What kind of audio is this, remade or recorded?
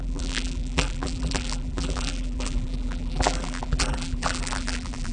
remade